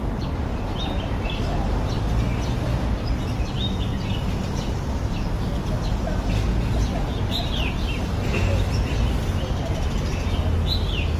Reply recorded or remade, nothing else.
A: recorded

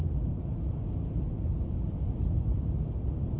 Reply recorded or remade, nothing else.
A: remade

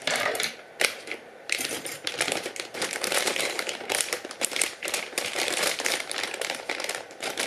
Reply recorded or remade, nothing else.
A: remade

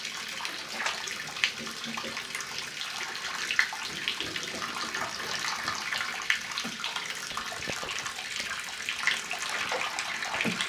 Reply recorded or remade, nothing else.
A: recorded